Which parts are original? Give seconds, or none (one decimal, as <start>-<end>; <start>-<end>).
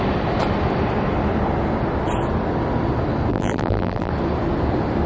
0.0-3.3; 4.1-5.1